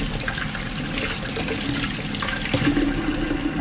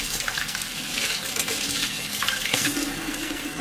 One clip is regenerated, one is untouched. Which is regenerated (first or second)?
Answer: second